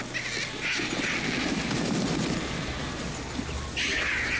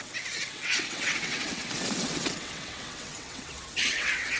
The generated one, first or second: second